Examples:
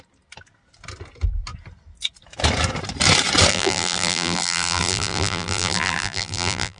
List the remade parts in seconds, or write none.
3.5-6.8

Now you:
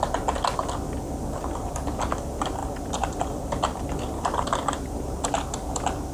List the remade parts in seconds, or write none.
2.6-5.0

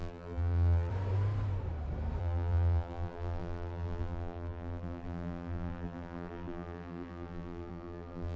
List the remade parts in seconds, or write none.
0.0-0.9; 2.2-8.4

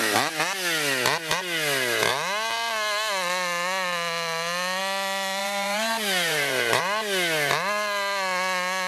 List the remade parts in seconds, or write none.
5.4-6.8